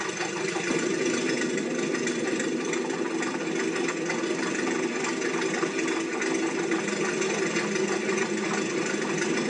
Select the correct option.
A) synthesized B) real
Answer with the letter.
B